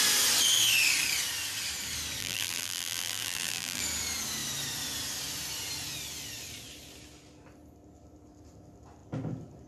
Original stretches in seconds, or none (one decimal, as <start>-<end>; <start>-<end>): 0.0-2.2; 3.8-9.7